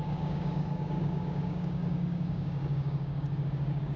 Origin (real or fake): fake